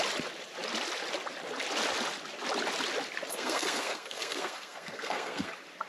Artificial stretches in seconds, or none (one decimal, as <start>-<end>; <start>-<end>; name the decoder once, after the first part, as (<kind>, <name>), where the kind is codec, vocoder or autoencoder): 3.3-5.5 (codec, SNAC)